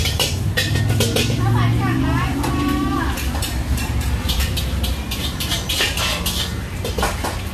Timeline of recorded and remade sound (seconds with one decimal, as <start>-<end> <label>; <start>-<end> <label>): 0.0-0.6 remade; 0.6-3.4 recorded; 3.4-5.7 remade; 5.7-7.5 recorded